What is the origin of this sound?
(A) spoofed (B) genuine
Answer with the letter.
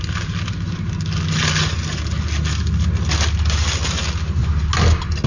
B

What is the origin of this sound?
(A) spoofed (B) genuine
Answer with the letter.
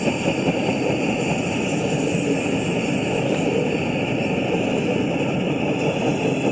B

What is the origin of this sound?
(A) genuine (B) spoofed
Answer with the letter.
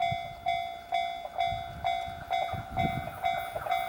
A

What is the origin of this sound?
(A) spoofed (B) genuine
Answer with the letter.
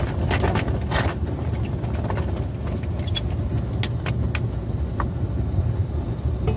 B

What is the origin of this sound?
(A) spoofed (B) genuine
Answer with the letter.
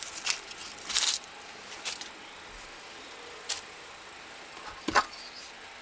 B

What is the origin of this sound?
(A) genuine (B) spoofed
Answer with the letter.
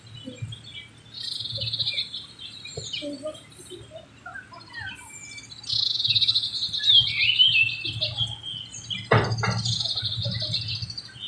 A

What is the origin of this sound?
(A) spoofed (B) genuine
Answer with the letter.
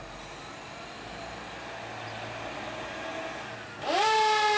B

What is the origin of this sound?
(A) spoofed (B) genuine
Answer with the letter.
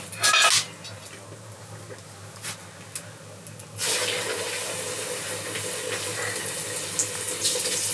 B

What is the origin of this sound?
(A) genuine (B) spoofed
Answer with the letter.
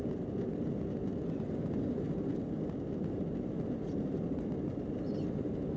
A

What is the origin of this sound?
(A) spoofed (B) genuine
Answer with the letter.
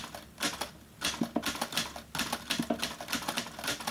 B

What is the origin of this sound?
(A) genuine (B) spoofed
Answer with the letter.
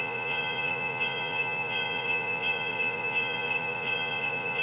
B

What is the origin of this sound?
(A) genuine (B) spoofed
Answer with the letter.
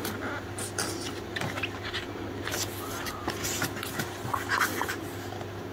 A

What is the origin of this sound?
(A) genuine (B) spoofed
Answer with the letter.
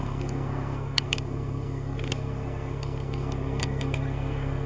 B